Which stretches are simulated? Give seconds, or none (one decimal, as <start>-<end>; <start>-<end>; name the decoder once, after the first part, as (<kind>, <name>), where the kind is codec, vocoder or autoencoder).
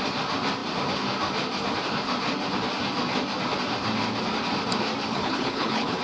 5.1-6.0 (codec, HILCodec)